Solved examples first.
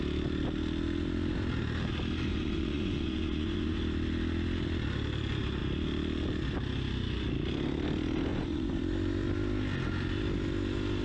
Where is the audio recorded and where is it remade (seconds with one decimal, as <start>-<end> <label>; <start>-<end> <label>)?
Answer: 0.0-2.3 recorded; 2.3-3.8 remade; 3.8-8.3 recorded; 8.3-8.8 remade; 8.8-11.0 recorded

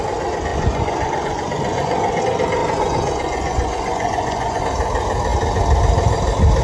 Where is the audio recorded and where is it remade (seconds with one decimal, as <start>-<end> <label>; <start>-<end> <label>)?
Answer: 0.0-0.5 recorded; 0.5-2.2 remade; 2.2-2.6 recorded; 2.6-4.6 remade; 4.6-6.6 recorded

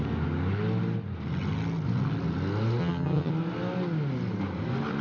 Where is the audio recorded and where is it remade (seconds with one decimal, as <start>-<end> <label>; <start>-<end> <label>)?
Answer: 0.0-2.8 recorded; 2.8-3.3 remade; 3.3-5.0 recorded

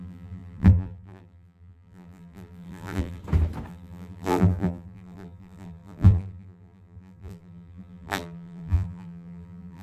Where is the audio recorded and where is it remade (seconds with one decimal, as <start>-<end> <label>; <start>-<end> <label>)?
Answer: 0.0-3.2 remade; 3.2-3.7 recorded; 3.7-9.8 remade